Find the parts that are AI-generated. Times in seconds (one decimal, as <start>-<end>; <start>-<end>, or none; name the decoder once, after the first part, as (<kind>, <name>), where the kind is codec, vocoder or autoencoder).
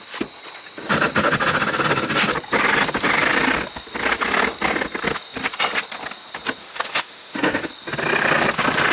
6.6-7.7 (autoencoder, DAC-VAE)